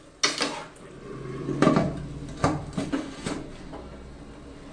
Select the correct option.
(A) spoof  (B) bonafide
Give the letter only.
B